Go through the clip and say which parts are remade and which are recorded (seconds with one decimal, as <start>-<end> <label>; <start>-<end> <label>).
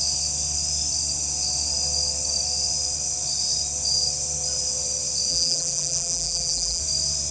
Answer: 0.0-5.3 recorded; 5.3-6.8 remade; 6.8-7.3 recorded